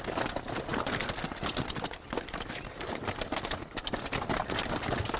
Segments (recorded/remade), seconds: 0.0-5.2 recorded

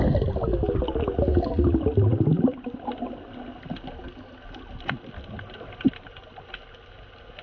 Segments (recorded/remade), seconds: 0.0-7.4 recorded

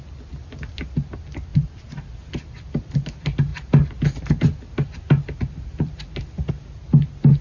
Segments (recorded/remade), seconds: 0.0-1.5 recorded; 1.5-2.1 remade; 2.1-7.4 recorded

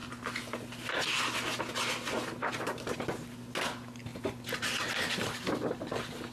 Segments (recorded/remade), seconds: 0.0-6.3 recorded

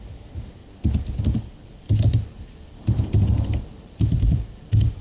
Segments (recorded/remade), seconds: 0.0-0.6 remade; 0.6-3.6 recorded; 3.6-5.0 remade

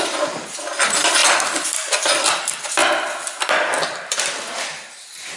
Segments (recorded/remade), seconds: 0.0-2.8 remade; 2.8-3.7 recorded; 3.7-5.4 remade

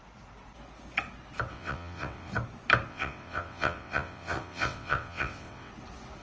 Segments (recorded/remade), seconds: 0.0-1.5 recorded; 1.5-2.3 remade; 2.3-2.9 recorded; 2.9-5.7 remade; 5.7-6.2 recorded

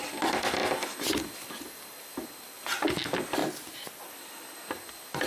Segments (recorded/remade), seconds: 0.0-3.4 recorded; 3.4-4.0 remade; 4.0-5.3 recorded